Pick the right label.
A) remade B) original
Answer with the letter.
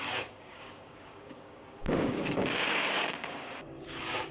A